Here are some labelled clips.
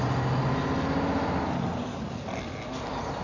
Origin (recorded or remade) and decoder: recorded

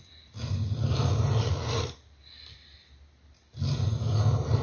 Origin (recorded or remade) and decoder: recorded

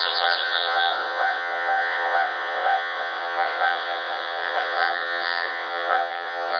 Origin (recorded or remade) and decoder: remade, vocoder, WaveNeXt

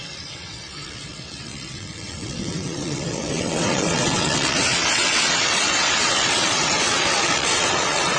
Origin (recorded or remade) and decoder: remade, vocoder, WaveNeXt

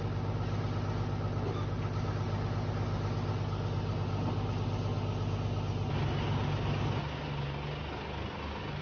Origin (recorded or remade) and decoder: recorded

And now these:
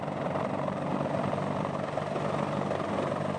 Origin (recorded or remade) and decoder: recorded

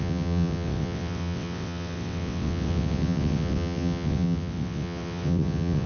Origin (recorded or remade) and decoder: remade, vocoder, WaveNeXt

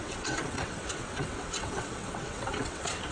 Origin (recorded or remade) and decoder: remade, vocoder, WaveNeXt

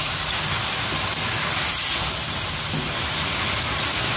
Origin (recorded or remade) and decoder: recorded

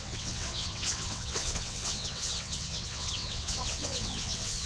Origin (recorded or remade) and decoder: remade, vocoder, WaveNeXt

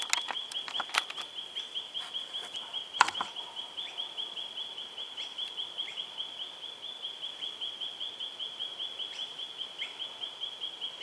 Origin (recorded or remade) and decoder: recorded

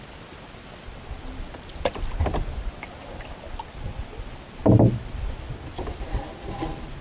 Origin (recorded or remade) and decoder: recorded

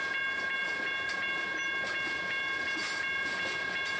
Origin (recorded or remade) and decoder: recorded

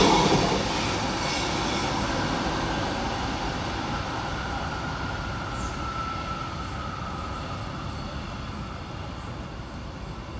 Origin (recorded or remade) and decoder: recorded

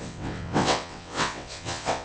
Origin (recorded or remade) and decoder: remade, vocoder, WaveNeXt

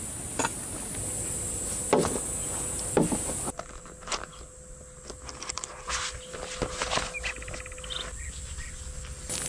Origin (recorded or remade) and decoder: recorded